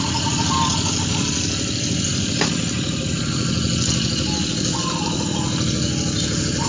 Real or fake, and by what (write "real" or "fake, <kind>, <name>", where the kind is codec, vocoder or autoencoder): real